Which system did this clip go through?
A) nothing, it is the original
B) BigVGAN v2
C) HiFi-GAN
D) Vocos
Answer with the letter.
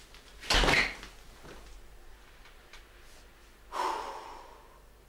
A